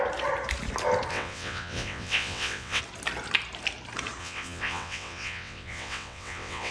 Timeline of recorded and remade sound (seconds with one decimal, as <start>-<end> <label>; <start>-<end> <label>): 0.0-1.1 recorded; 1.1-2.8 remade; 2.8-4.2 recorded; 4.2-6.7 remade